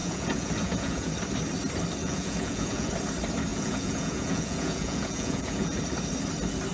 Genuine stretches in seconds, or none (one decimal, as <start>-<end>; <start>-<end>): 1.1-2.0; 2.9-3.5; 5.8-6.7